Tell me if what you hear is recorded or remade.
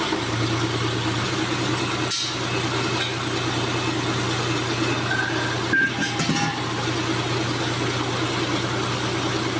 recorded